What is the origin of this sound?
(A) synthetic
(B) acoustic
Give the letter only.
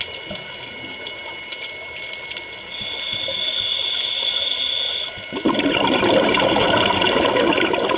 B